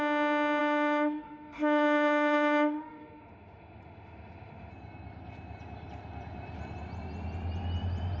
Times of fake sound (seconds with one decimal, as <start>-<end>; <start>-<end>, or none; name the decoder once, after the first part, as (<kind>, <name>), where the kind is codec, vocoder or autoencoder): 0.6-4.7 (autoencoder, DAC-VAE)